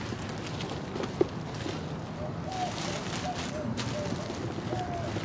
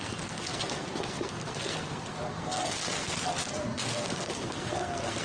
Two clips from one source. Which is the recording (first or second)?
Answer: first